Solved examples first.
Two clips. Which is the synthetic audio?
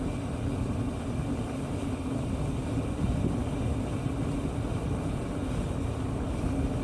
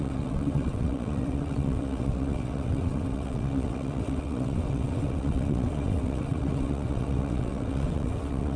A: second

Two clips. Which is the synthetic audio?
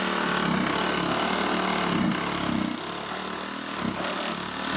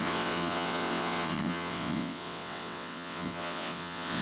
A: second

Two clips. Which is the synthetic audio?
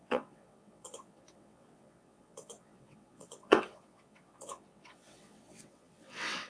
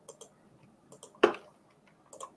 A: first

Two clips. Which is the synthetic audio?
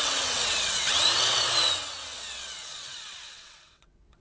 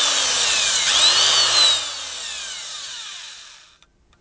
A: first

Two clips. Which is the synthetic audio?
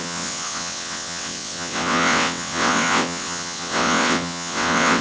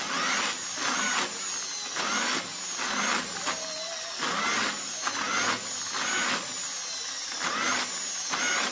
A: first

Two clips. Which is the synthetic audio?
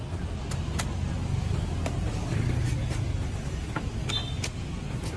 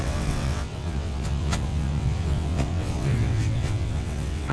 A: second